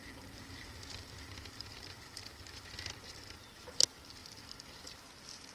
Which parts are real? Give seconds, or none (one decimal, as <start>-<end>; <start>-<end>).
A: 0.0-5.5